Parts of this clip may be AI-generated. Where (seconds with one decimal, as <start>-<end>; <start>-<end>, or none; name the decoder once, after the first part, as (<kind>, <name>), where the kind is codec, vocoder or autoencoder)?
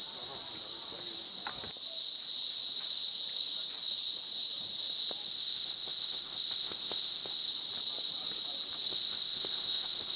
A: 5.3-7.5 (codec, ZipCodec); 8.9-10.2